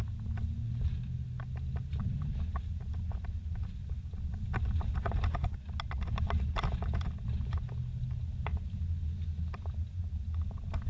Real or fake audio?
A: real